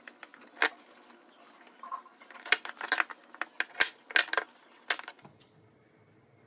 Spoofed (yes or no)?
no